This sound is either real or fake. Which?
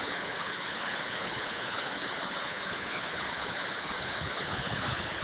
fake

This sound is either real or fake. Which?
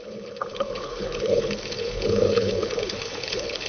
fake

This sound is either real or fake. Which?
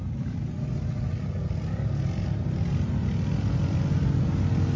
real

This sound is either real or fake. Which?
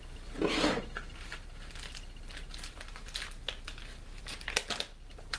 real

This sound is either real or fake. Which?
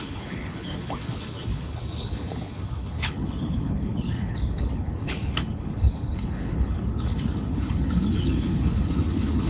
fake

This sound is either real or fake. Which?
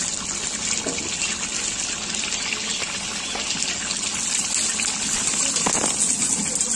real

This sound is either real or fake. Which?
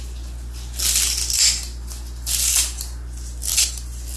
real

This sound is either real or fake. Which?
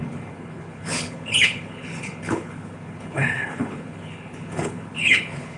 fake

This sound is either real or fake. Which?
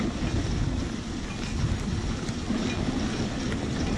real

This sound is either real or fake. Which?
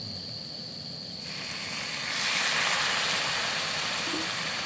real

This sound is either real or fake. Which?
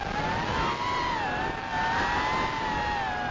real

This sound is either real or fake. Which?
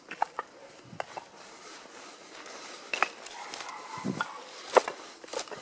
real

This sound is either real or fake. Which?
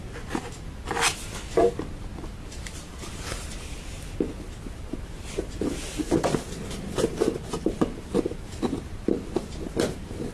real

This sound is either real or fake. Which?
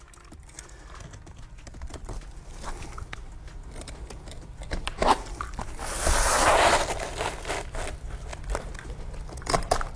real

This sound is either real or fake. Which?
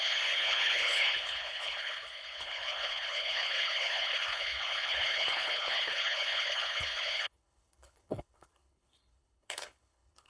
fake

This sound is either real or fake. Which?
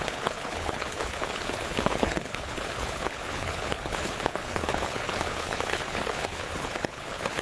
fake